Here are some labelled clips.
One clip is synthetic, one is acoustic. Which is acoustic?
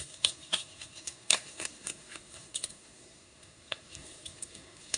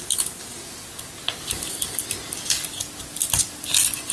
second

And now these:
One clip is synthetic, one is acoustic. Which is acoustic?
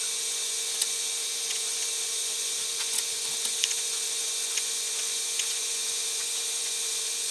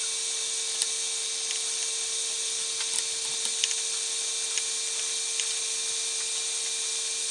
second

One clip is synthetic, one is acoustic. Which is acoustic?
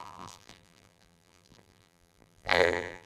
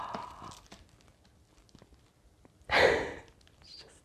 second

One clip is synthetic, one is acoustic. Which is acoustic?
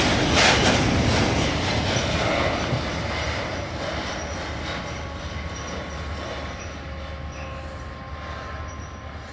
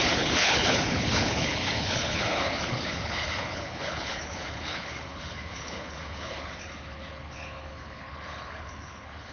first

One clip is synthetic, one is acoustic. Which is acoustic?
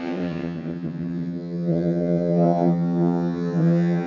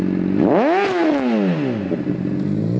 second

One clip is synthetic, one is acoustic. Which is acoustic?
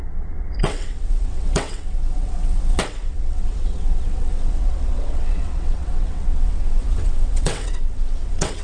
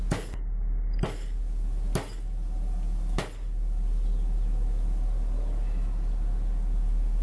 second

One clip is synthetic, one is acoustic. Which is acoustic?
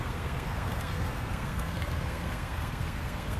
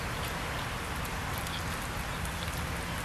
second